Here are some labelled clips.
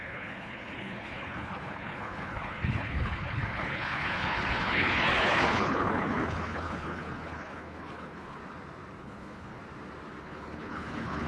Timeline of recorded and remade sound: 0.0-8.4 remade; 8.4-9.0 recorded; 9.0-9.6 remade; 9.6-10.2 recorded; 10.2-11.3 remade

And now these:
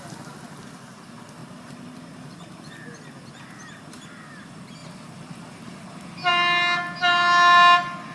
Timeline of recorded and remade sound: 0.0-1.4 recorded; 1.4-2.7 remade; 2.7-8.1 recorded